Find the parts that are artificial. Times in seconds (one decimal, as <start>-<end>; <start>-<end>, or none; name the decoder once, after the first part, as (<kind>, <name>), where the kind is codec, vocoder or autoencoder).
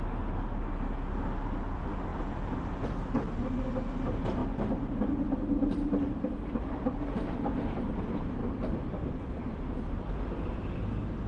none